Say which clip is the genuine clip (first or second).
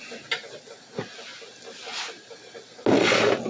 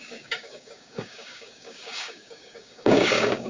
first